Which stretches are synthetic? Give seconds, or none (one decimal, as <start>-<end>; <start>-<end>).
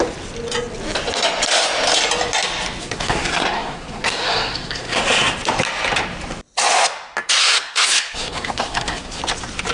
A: 2.8-5.0; 7.4-9.2